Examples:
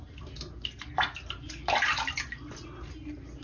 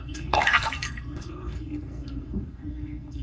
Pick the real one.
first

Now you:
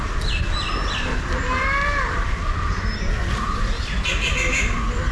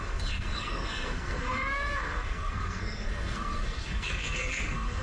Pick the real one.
first